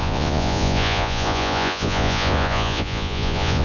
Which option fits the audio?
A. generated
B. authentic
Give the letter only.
A